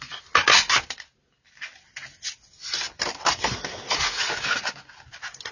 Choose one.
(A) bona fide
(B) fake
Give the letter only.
A